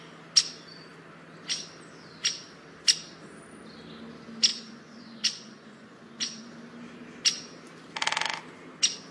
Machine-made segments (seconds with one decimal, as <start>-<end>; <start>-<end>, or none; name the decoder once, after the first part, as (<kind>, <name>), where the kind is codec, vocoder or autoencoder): 4.5-6.5 (vocoder, Vocos)